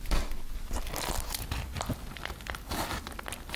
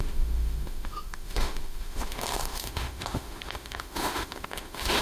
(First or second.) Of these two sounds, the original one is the first